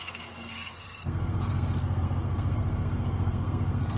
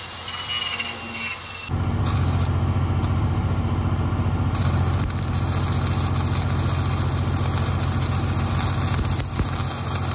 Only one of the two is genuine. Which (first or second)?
second